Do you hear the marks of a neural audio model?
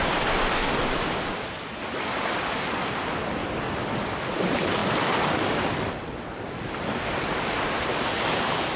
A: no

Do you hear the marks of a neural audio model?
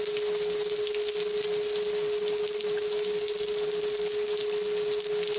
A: no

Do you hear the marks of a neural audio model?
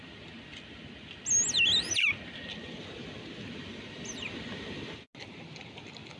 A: no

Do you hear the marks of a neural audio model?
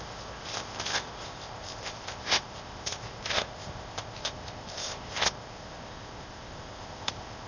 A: yes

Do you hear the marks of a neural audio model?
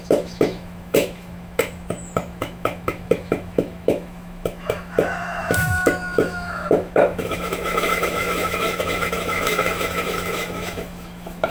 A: yes